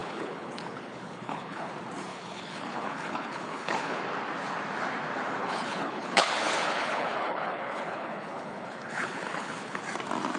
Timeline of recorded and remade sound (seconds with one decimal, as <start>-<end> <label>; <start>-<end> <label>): 0.0-1.7 remade; 1.7-2.1 recorded; 2.1-4.0 remade; 4.0-5.4 recorded; 5.4-9.8 remade; 9.8-10.4 recorded